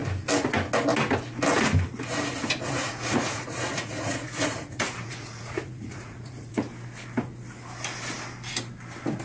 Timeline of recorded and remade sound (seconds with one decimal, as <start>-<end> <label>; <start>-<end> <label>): 0.0-2.8 recorded; 2.8-6.6 remade; 6.6-9.2 recorded